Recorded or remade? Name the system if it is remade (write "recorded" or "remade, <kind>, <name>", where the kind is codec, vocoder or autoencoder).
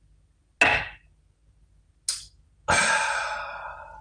recorded